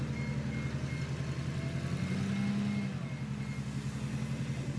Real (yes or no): yes